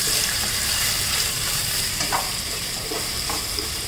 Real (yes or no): no